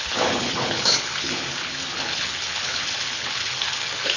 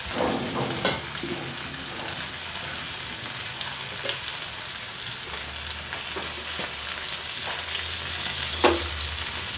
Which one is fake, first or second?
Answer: first